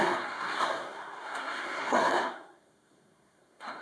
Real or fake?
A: fake